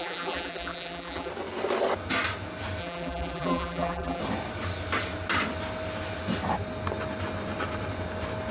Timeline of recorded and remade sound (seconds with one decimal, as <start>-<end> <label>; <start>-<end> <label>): 0.0-1.3 remade; 1.3-2.8 recorded; 2.8-4.2 remade; 4.2-8.5 recorded